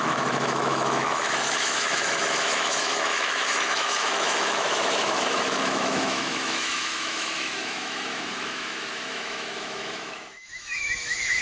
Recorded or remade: remade